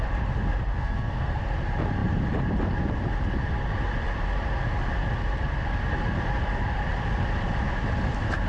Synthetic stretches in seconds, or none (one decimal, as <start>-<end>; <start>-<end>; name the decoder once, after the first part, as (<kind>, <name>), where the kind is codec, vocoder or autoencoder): 0.8-1.4 (codec, SNAC)